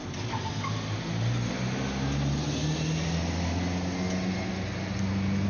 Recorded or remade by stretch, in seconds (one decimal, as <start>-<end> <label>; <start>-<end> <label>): 0.0-5.5 recorded